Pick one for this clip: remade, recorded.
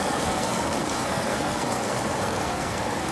remade